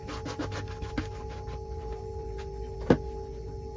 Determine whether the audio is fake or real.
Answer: real